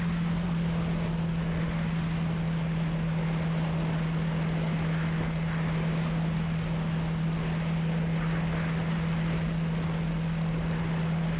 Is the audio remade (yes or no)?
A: no